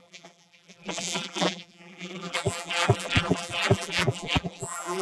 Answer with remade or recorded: remade